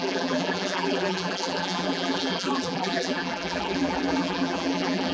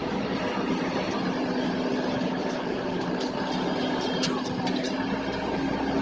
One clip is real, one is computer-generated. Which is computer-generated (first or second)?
first